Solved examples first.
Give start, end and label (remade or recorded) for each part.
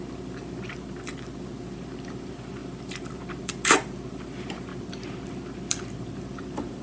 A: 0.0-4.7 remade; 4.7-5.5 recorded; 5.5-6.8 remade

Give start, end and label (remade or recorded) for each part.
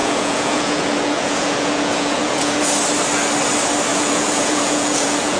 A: 0.0-2.6 remade; 2.6-3.9 recorded; 3.9-5.4 remade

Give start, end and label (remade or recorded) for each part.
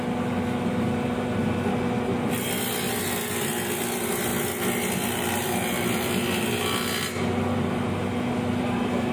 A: 0.0-9.1 recorded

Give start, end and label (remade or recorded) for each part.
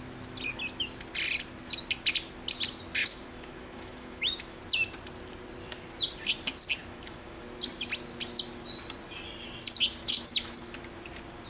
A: 0.0-3.0 recorded; 3.0-4.6 remade; 4.6-6.8 recorded; 6.8-7.4 remade; 7.4-10.0 recorded; 10.0-10.6 remade; 10.6-11.5 recorded